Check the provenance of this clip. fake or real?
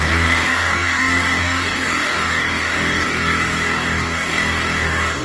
fake